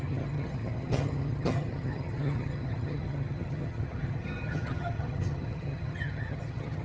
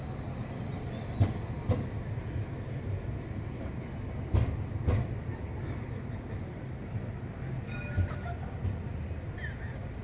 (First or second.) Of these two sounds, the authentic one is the second